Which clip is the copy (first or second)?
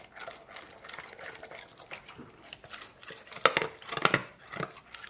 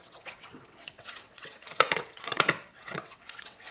second